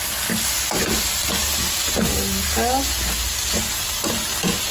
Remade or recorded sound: recorded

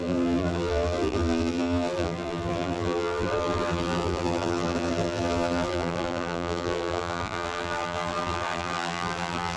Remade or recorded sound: remade